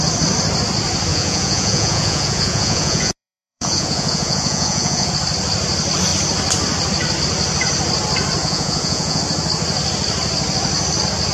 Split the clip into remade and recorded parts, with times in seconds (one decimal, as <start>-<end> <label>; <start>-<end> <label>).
0.0-1.1 recorded; 1.1-5.1 remade; 5.1-8.4 recorded; 8.4-9.2 remade; 9.2-11.3 recorded

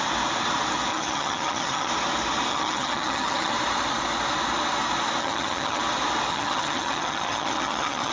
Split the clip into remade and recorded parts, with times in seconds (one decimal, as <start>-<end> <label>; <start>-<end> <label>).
0.0-0.9 recorded; 0.9-1.9 remade; 1.9-2.5 recorded; 2.5-3.5 remade; 3.5-5.2 recorded; 5.2-5.8 remade; 5.8-6.3 recorded; 6.3-8.1 remade

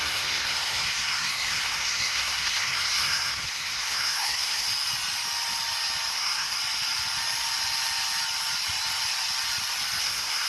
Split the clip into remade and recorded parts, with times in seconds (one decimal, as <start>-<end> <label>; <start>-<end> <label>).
0.0-4.7 remade; 4.7-6.1 recorded; 6.1-6.6 remade; 6.6-10.0 recorded; 10.0-10.5 remade

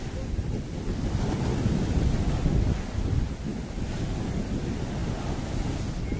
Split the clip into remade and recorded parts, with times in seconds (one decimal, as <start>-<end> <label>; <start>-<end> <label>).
0.0-6.2 recorded

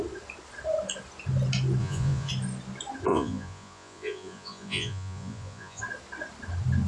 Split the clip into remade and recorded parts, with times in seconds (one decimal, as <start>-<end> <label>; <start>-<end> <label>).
0.0-1.8 recorded; 1.8-2.3 remade; 2.3-3.1 recorded; 3.1-5.8 remade; 5.8-6.9 recorded